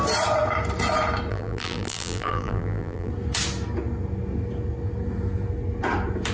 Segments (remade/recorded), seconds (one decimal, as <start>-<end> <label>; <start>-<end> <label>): 0.0-1.3 recorded; 1.3-3.1 remade; 3.1-6.3 recorded